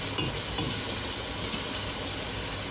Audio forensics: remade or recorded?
recorded